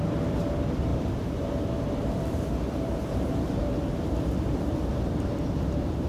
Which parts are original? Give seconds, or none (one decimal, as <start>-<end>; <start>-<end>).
0.0-0.9; 1.5-2.0